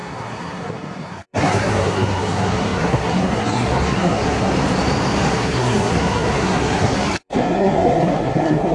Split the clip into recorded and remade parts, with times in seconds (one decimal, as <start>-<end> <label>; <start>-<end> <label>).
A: 0.0-4.5 remade; 4.5-5.3 recorded; 5.3-8.7 remade